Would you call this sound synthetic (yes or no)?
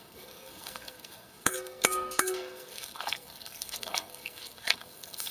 yes